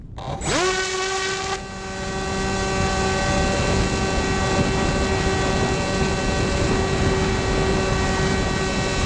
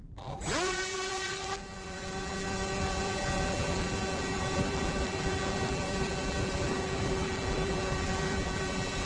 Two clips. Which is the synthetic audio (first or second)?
second